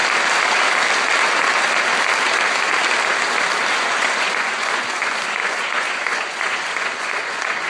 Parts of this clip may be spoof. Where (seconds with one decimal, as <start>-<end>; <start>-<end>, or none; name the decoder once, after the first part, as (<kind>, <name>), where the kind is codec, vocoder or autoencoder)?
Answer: 3.7-7.7 (vocoder, Vocos)